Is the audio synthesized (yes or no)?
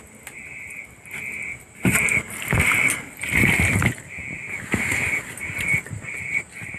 no